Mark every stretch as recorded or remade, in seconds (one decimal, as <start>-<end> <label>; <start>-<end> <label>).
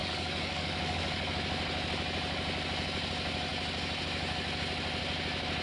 0.0-1.3 remade; 1.3-5.6 recorded